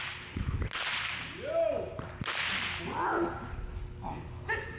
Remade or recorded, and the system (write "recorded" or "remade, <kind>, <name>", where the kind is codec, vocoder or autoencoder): recorded